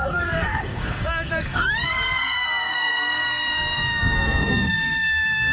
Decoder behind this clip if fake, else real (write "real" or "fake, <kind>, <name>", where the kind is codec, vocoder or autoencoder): fake, codec, SNAC